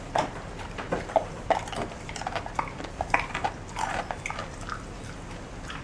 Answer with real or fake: fake